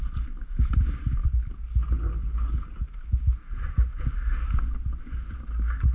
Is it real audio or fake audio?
real